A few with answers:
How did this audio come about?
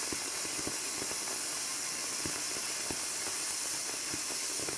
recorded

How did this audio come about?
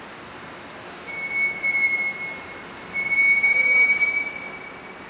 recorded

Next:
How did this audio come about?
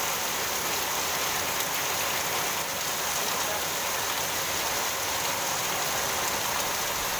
recorded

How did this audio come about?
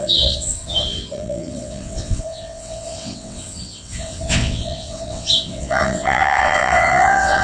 remade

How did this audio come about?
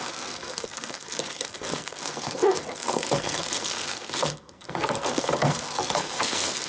remade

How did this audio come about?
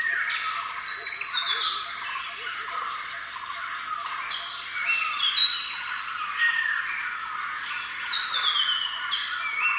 recorded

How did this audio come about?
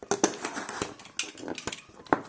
recorded